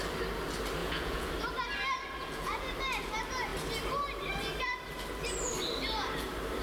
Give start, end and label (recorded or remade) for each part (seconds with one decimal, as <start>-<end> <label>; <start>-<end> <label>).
0.0-0.8 recorded; 0.8-1.3 remade; 1.3-2.2 recorded; 2.2-2.7 remade; 2.7-6.6 recorded